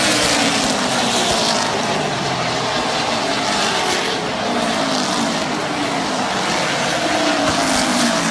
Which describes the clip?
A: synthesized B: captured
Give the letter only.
B